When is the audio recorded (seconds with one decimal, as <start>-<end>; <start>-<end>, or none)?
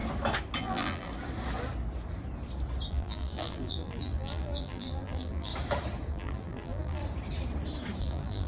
0.0-0.6; 1.1-2.9; 5.5-6.1; 7.0-8.0